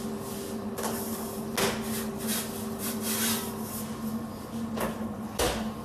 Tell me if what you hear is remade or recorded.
recorded